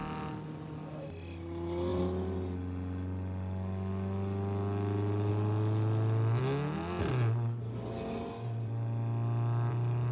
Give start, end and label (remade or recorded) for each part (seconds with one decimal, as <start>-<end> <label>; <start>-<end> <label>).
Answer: 0.0-10.1 recorded